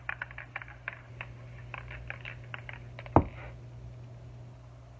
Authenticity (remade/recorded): recorded